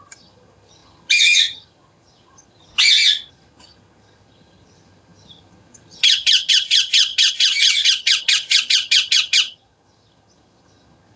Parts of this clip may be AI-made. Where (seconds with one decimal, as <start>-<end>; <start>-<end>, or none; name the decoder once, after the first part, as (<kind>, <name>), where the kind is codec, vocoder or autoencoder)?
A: 0.0-2.7 (vocoder, HiFi-GAN); 3.3-11.2